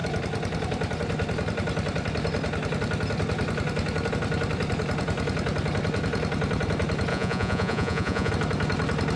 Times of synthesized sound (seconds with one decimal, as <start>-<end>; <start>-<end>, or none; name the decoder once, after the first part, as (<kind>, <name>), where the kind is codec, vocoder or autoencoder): 7.1-8.3 (vocoder, Vocos)